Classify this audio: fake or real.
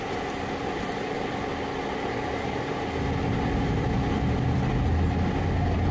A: real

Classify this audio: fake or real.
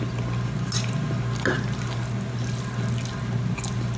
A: real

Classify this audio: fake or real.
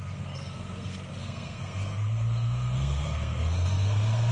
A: fake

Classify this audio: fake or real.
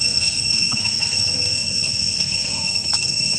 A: fake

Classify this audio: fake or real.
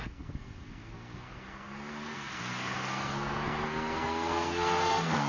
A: fake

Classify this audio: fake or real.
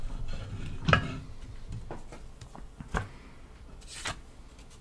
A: real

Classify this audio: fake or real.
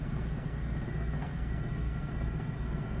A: fake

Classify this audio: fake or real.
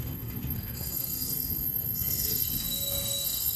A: fake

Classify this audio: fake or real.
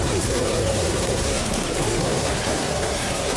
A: fake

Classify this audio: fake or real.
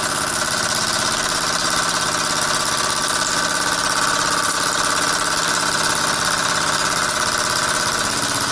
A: real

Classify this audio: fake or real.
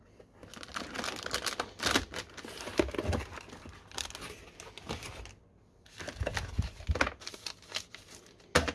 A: real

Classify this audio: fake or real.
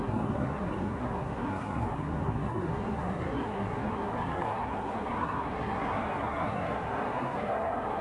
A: fake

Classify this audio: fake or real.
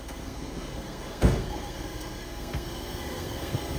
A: fake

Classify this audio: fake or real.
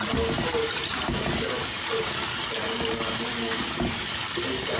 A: real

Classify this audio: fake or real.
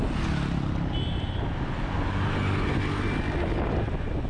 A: real